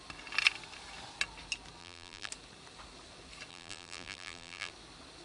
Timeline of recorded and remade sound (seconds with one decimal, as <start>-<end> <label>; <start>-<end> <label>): 0.0-1.8 recorded; 1.8-2.3 remade; 2.3-3.5 recorded; 3.5-4.7 remade; 4.7-5.2 recorded